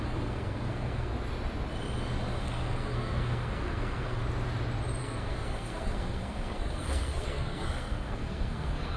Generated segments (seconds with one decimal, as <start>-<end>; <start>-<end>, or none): 0.0-1.1; 2.4-4.2; 5.0-9.0